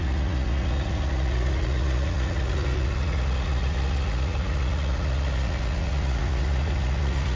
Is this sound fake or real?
fake